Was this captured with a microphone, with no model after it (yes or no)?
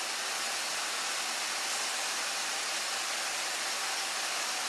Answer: yes